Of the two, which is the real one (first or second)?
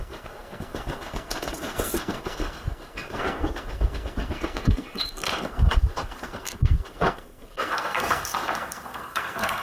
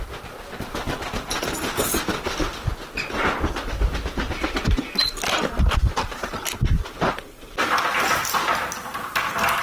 second